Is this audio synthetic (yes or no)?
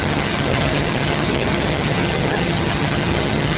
yes